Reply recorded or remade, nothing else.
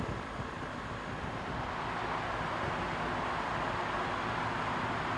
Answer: recorded